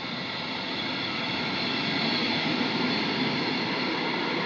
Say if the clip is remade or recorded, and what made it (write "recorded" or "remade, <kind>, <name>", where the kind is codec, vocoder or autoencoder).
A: recorded